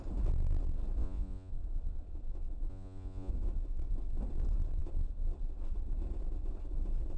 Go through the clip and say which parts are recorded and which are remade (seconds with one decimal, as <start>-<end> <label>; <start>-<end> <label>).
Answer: 0.0-1.0 recorded; 1.0-1.5 remade; 1.5-2.7 recorded; 2.7-3.3 remade; 3.3-7.2 recorded